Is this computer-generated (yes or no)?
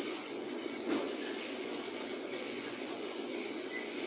yes